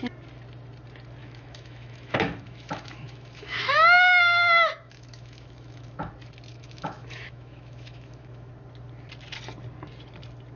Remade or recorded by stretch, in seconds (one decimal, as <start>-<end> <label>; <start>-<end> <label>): 0.0-1.2 recorded; 1.2-6.1 remade; 6.1-6.5 recorded; 6.5-8.5 remade; 8.5-10.6 recorded